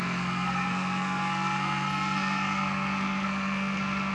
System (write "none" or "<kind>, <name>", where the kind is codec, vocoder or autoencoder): codec, SNAC